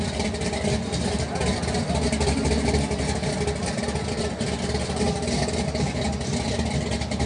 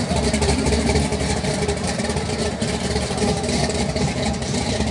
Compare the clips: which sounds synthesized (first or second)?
second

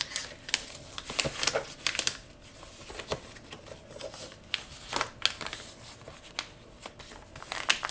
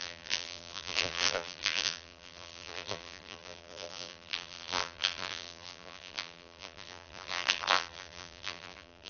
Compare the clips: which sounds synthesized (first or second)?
second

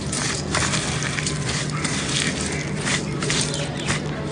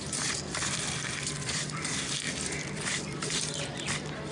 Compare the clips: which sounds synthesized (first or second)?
second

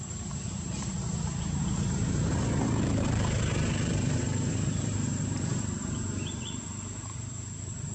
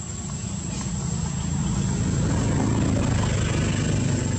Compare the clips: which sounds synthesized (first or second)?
first